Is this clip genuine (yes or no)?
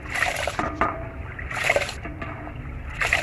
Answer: no